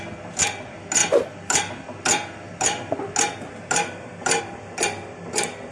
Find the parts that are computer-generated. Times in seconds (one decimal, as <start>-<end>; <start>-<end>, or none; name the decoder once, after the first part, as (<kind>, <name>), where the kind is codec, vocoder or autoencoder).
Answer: none